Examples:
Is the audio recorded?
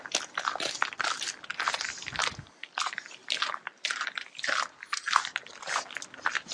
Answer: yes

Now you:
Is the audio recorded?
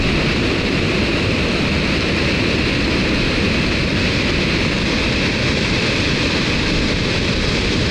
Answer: yes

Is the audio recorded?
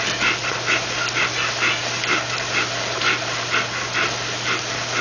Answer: yes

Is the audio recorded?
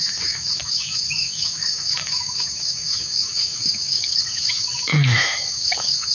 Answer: no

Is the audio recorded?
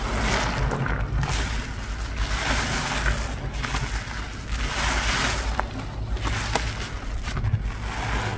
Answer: yes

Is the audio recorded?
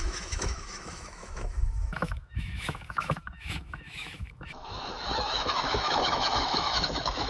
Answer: no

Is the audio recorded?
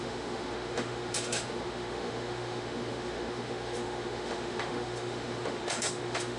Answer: no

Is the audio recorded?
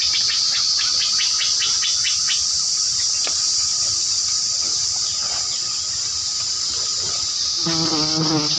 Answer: yes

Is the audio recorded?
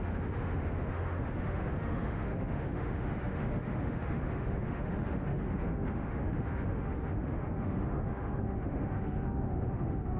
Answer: no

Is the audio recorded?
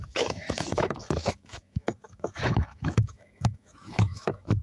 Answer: no